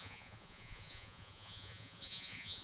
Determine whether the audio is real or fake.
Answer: fake